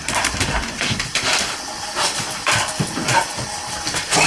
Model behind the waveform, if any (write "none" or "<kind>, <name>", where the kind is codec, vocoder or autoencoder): none